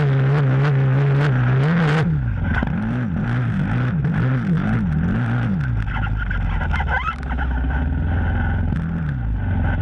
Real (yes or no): yes